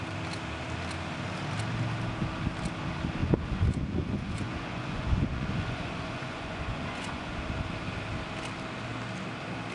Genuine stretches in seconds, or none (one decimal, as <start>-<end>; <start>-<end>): 0.0-3.2; 7.4-9.7